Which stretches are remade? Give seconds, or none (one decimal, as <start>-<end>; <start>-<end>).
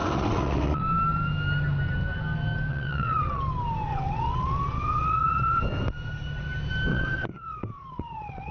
0.0-0.8; 2.7-3.4; 3.9-5.6; 6.9-8.5